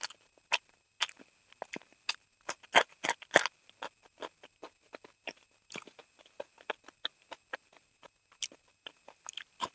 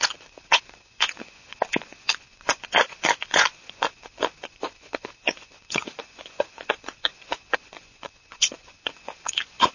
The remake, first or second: second